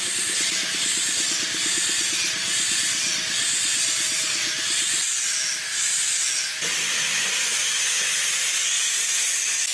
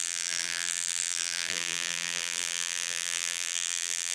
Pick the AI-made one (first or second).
second